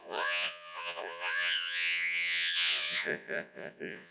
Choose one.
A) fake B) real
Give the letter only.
A